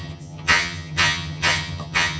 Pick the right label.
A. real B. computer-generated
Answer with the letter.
B